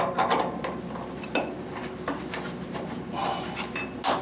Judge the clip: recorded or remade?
recorded